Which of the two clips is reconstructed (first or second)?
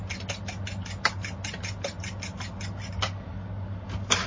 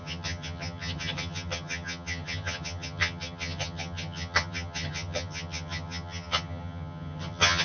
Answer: second